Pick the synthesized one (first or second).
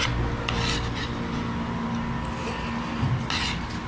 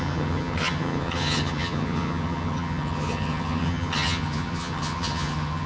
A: second